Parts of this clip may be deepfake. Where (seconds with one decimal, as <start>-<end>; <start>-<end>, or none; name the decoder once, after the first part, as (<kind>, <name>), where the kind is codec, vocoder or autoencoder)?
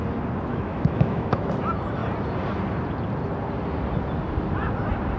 0.5-1.6 (autoencoder, DAC-VAE)